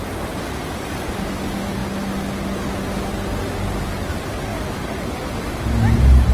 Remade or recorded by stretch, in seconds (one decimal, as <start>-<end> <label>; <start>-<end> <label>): 0.0-6.3 recorded